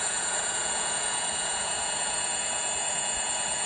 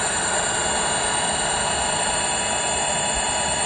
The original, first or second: second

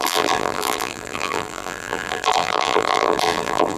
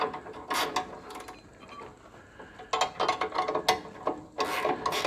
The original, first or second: second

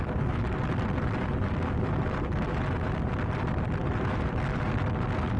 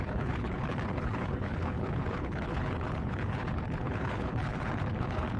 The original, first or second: first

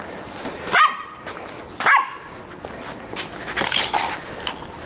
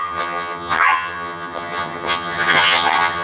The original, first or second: first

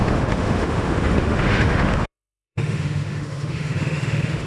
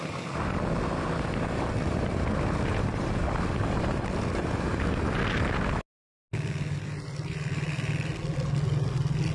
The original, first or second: second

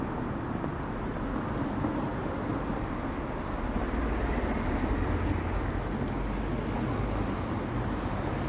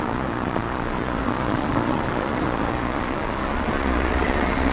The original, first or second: first